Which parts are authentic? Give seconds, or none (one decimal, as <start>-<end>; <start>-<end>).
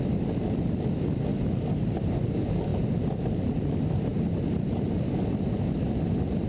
0.0-6.5